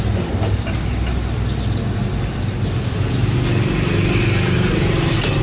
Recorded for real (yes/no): yes